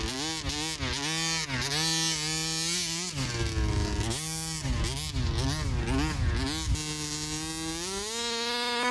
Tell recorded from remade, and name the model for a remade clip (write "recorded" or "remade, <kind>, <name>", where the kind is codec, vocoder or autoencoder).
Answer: recorded